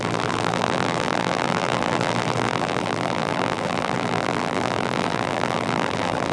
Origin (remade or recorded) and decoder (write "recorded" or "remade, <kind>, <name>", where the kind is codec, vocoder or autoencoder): remade, vocoder, BigVGAN v2